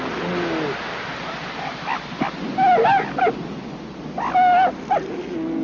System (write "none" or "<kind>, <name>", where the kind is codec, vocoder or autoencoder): none